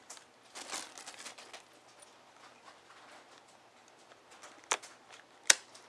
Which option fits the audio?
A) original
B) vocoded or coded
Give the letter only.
A